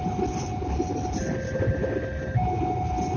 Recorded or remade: recorded